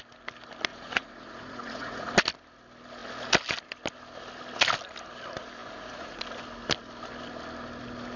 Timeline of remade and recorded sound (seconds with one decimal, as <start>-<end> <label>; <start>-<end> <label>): 0.0-0.7 recorded; 0.7-2.1 remade; 2.1-5.6 recorded; 5.6-6.2 remade; 6.2-8.2 recorded